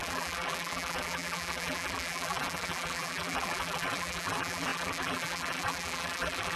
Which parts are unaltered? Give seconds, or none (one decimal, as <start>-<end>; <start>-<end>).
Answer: none